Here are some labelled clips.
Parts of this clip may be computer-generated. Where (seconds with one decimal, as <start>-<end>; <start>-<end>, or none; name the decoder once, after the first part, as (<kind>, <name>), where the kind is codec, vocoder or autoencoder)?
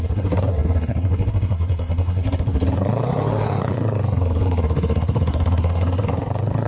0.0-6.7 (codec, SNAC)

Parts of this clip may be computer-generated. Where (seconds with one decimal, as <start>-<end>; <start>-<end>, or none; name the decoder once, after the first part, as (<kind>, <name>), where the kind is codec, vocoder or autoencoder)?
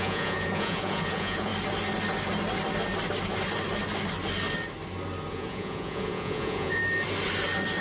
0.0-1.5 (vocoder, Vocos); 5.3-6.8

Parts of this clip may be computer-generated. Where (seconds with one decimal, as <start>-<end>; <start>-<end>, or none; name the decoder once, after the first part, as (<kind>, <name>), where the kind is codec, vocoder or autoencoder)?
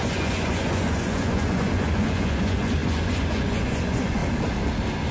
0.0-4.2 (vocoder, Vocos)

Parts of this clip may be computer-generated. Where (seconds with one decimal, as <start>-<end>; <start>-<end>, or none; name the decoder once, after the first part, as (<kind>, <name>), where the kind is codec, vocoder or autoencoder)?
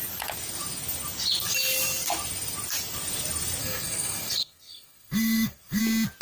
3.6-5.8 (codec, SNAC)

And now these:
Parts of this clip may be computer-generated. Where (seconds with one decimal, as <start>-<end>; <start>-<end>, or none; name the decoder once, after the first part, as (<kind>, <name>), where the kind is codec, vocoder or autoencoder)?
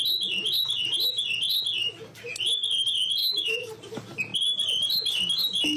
3.2-3.7 (autoencoder, DAC-VAE)